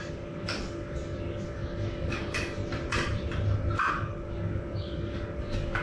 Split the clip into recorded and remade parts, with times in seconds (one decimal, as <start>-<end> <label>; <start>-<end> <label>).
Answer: 0.0-2.6 remade; 2.6-3.9 recorded; 3.9-5.8 remade